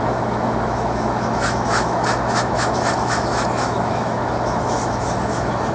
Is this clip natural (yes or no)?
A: no